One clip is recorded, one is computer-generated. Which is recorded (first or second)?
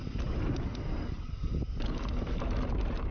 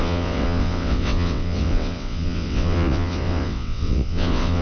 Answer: first